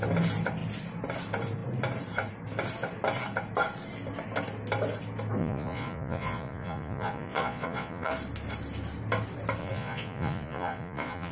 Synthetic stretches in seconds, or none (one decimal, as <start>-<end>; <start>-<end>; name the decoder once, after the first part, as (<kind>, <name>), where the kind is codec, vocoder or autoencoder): 5.4-8.1 (vocoder, Vocos); 9.6-11.3